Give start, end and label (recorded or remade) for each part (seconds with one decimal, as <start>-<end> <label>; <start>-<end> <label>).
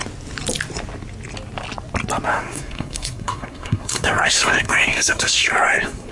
0.0-2.3 recorded; 2.3-6.1 remade